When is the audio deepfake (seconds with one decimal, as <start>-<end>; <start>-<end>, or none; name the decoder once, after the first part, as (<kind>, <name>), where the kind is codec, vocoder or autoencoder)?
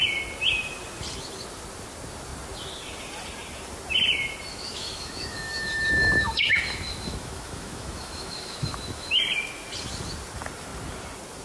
4.5-9.2 (autoencoder, DAC-VAE)